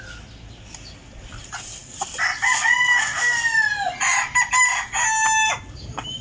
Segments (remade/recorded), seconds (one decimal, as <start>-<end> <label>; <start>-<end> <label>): 0.0-6.2 recorded